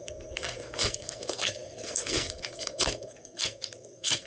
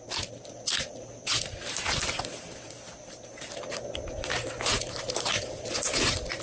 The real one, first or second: second